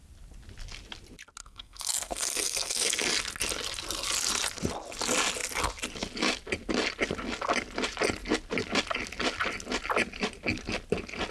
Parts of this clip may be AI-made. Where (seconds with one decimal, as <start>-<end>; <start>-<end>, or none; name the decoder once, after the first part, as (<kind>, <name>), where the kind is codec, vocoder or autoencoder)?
1.4-2.9 (codec, SNAC)